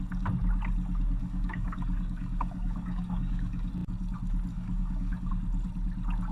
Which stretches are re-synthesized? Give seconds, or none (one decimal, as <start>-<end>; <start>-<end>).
1.2-3.7; 4.5-5.3